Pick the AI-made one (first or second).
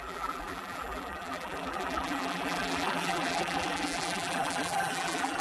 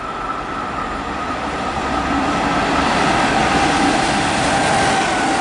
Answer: first